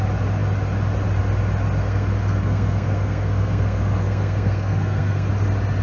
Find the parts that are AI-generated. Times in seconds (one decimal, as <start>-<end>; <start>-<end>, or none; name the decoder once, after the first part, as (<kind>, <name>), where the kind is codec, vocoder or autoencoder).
1.8-5.3 (codec, SNAC)